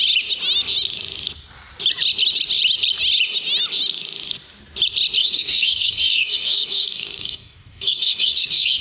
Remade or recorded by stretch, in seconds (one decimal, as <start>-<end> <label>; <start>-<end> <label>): 0.0-5.2 recorded; 5.2-8.8 remade